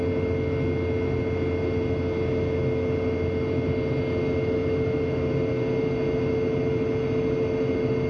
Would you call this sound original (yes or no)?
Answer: yes